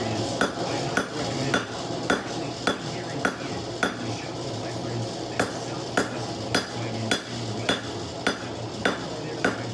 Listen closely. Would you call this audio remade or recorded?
recorded